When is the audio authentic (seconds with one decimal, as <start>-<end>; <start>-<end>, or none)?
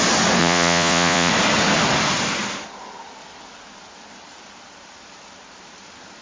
0.0-0.4; 1.3-6.2